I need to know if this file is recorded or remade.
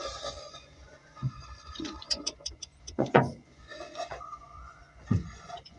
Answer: remade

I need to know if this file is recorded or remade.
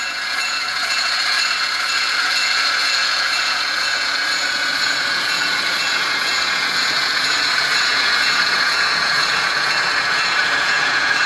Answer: remade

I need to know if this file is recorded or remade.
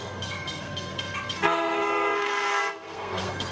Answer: remade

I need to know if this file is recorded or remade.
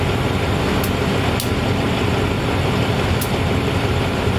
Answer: recorded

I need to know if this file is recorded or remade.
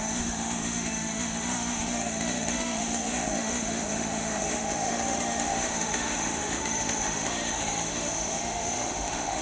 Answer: remade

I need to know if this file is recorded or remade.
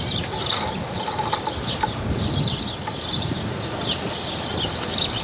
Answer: recorded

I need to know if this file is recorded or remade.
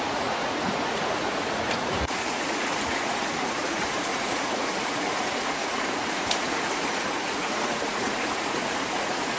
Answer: remade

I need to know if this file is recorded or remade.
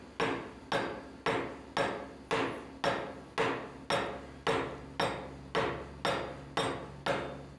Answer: recorded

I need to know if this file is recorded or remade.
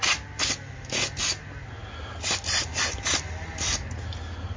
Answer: recorded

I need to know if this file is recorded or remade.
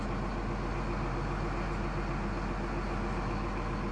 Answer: recorded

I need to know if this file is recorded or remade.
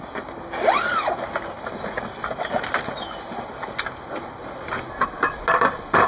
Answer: recorded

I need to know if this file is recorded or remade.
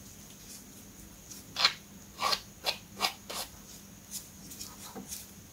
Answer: recorded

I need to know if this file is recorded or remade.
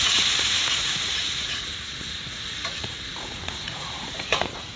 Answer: remade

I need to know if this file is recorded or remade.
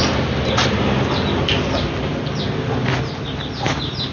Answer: recorded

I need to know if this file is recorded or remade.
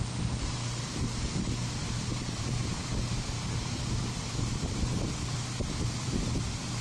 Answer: recorded